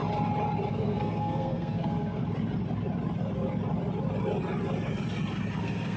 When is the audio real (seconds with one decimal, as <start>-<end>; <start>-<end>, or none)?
0.0-0.7; 2.2-5.6